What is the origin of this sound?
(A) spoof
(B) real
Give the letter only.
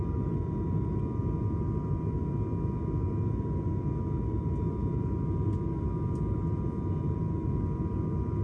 B